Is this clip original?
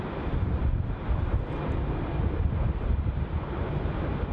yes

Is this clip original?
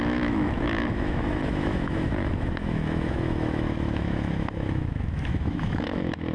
no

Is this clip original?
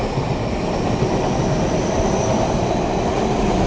yes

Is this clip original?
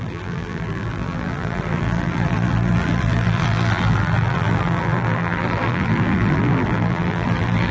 no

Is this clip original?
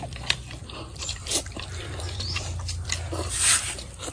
no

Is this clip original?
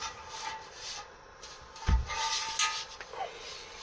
yes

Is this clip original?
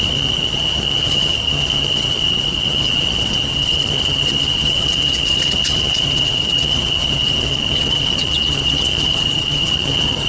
no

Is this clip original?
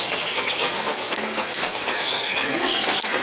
no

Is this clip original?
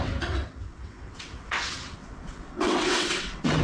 no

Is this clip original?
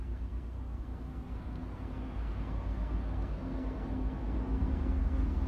no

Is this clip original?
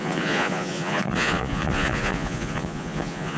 no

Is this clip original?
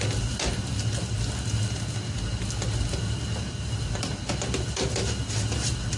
yes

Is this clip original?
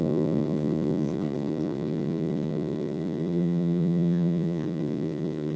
no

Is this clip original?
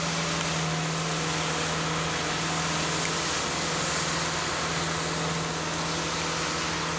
yes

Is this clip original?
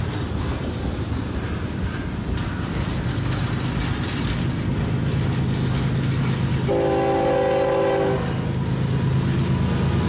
yes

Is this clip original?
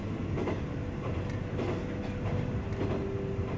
yes